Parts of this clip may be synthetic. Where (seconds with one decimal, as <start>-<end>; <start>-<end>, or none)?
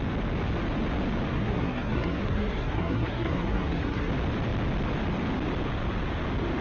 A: 1.3-4.1